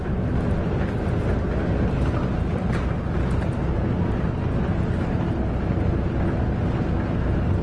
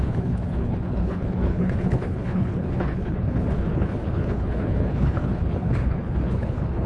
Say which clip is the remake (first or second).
second